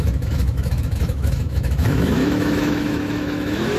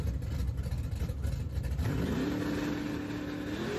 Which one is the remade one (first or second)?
first